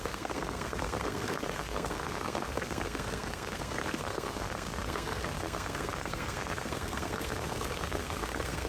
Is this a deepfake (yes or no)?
yes